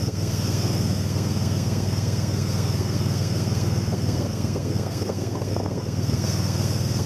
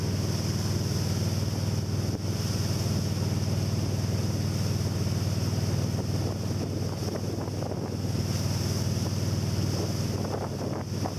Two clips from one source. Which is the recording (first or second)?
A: second